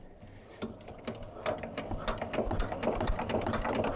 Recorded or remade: recorded